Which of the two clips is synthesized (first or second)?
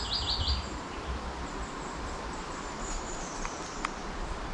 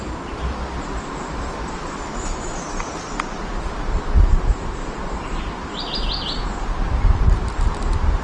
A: first